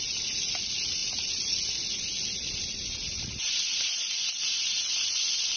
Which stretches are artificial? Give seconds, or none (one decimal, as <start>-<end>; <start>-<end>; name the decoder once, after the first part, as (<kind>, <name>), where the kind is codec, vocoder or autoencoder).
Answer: none